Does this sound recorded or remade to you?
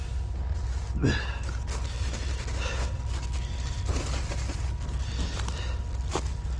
recorded